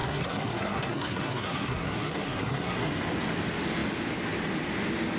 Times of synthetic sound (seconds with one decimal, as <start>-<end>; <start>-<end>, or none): 0.0-2.9